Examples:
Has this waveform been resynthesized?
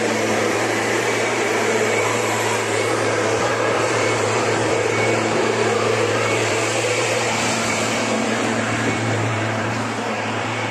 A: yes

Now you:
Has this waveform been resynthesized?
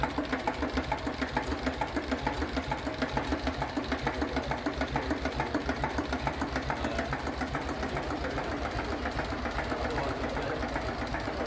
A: no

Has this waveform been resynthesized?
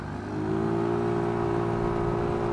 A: no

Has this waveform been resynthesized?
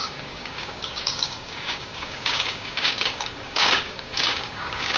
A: yes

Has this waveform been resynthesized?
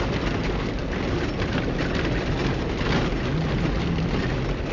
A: no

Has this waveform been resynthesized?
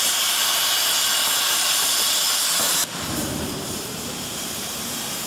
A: yes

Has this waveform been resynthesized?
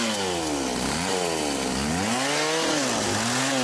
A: no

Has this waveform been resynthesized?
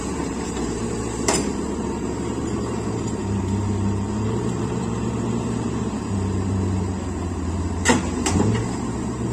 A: yes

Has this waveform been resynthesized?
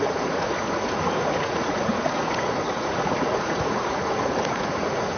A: yes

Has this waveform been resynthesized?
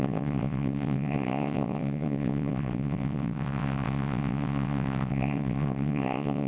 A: yes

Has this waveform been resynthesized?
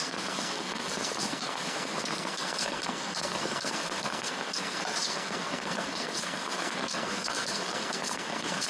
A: yes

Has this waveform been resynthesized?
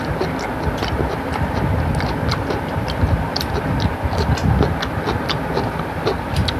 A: no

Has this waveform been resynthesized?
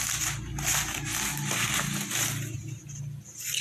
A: no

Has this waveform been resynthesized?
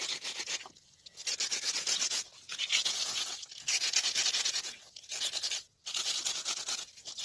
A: yes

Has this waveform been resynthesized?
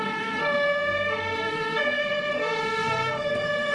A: yes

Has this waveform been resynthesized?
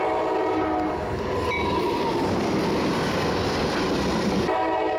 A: no